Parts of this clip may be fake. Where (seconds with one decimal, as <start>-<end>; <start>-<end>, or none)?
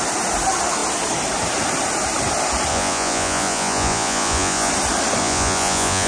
2.7-4.7; 5.2-6.1